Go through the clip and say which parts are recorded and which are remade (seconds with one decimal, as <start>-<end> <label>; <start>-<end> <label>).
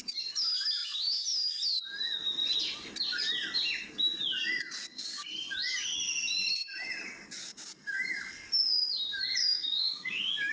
0.0-9.4 recorded; 9.4-10.5 remade